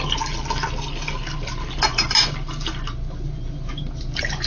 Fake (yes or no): no